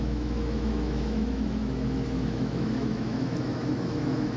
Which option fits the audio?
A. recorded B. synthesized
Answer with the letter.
B